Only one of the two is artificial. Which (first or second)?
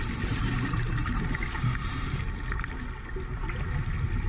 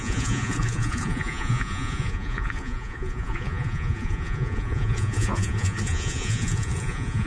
second